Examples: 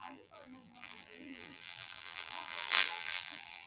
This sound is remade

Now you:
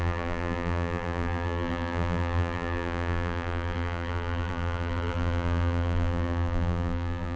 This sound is remade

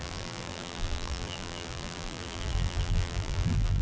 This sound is remade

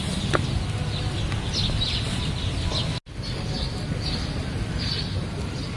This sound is recorded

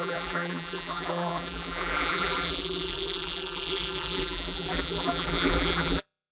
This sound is remade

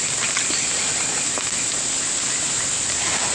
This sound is recorded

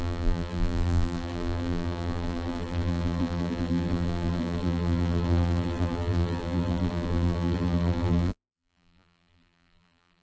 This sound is remade